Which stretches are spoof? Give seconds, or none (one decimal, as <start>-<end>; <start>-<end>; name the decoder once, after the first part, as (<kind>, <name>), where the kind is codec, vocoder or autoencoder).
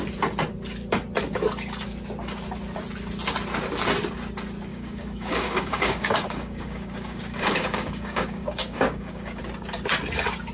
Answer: 4.7-9.4 (codec, DAC)